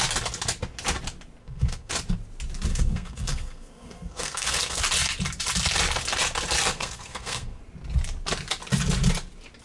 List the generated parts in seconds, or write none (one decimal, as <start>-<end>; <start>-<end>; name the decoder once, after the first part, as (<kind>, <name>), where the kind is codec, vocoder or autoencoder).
1.4-1.9 (codec, SNAC); 2.7-4.8; 6.7-7.6

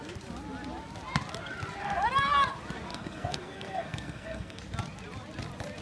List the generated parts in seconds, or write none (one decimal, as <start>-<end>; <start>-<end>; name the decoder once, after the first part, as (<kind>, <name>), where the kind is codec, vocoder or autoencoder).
2.9-4.6 (codec, SNAC)

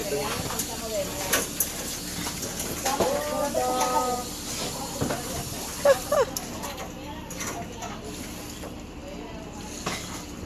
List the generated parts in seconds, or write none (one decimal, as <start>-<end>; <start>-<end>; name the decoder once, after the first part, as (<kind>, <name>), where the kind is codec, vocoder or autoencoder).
none

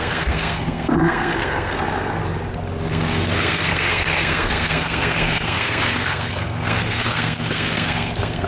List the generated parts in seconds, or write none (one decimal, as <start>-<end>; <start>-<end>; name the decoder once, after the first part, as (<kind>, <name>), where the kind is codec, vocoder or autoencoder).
0.0-2.2 (codec, SNAC); 2.9-8.5